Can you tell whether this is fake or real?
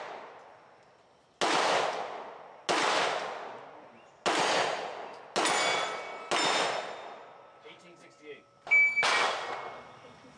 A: real